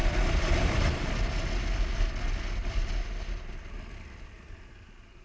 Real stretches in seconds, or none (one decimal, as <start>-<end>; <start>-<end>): 1.1-2.6; 4.8-5.2